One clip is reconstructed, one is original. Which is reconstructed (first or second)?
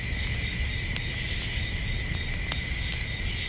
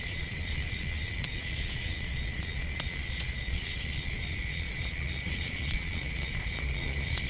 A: second